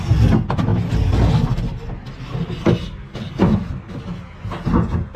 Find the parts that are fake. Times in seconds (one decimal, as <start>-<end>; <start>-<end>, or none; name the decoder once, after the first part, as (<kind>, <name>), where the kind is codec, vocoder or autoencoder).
none